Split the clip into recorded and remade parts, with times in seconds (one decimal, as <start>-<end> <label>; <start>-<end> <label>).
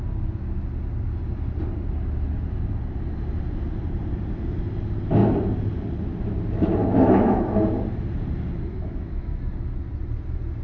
0.0-6.8 recorded; 6.8-7.5 remade; 7.5-8.7 recorded; 8.7-9.4 remade; 9.4-10.6 recorded